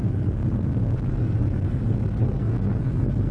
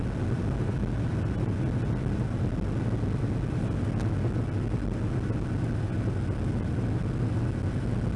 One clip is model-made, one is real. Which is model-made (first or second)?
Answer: first